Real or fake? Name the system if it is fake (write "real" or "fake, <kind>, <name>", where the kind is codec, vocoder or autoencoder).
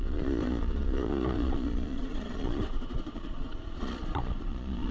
fake, vocoder, Vocos